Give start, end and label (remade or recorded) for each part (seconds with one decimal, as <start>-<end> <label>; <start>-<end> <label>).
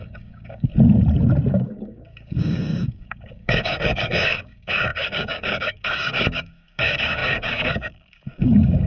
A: 0.0-0.7 remade; 0.7-1.5 recorded; 1.5-8.9 remade